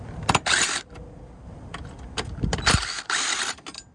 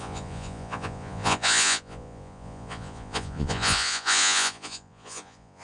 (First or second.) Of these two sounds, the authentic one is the first